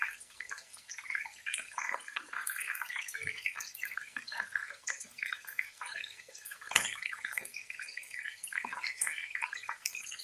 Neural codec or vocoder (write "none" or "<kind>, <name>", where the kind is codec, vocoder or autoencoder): codec, SNAC